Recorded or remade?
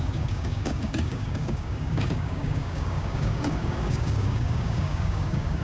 remade